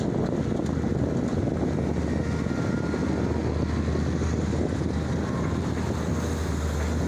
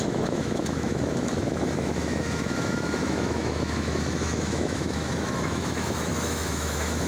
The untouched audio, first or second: first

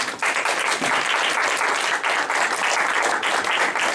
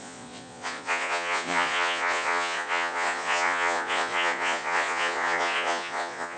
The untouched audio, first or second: first